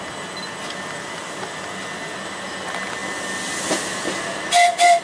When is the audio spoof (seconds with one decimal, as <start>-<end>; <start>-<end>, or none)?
none